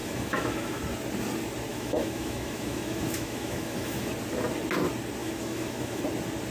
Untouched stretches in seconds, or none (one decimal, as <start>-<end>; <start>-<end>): 0.8-1.7; 4.1-5.2; 6.0-6.5